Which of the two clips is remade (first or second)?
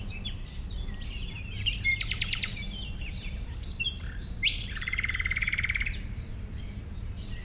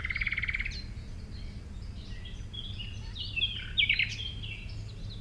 first